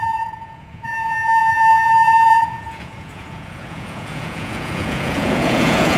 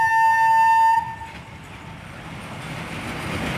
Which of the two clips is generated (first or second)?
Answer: first